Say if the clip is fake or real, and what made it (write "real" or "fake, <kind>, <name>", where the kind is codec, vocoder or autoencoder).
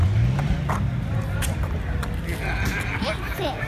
real